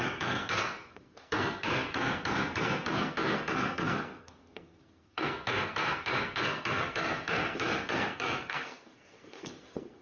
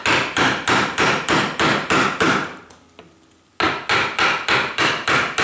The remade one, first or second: first